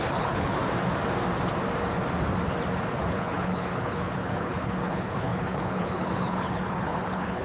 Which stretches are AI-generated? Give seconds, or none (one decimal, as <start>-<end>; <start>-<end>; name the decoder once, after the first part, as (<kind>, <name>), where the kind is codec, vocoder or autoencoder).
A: 0.0-0.6 (codec, HILCodec); 3.0-7.4